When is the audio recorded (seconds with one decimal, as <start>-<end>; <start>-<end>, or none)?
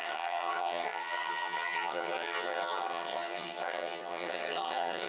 none